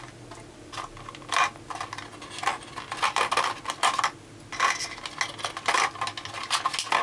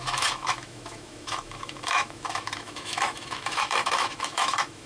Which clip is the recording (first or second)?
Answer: first